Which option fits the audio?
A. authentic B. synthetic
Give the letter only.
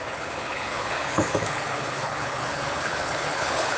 B